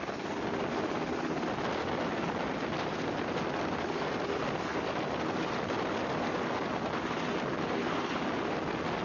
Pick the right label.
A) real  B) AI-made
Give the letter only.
A